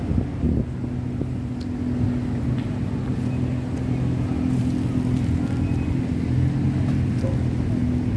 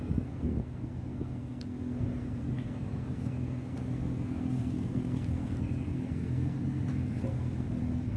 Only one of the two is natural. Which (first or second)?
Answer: first